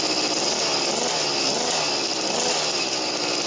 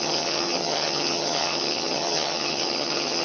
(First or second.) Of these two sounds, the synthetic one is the second